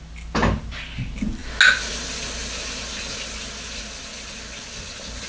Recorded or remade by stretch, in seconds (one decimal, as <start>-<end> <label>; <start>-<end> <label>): 0.0-5.3 recorded